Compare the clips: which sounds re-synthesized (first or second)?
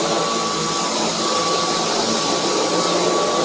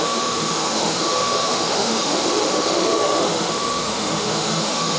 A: second